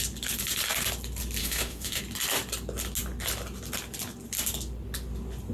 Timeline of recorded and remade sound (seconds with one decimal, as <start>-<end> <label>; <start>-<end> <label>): 0.0-1.4 recorded; 1.4-2.0 remade; 2.0-5.5 recorded